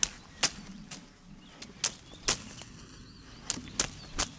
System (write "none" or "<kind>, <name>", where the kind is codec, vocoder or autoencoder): none